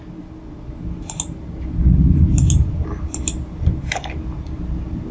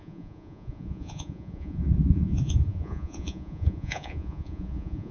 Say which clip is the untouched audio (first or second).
first